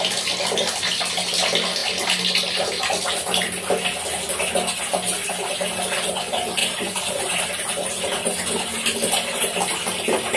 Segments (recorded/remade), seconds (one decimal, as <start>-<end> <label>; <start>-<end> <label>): 0.0-6.6 recorded; 6.6-7.2 remade; 7.2-10.4 recorded

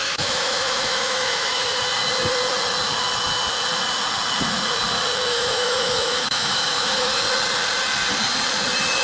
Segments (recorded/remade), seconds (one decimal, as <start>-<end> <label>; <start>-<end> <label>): 0.0-1.8 remade; 1.8-5.3 recorded; 5.3-7.2 remade; 7.2-9.0 recorded

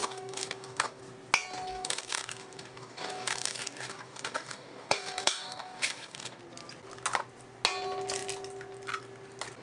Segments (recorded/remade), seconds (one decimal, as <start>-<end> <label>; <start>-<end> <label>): 0.0-1.0 remade; 1.0-1.7 recorded; 1.7-6.4 remade; 6.4-9.6 recorded

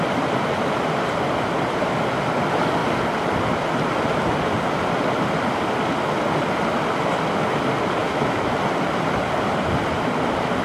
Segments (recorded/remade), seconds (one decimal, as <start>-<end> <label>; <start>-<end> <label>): 0.0-8.0 recorded; 8.0-8.5 remade; 8.5-10.6 recorded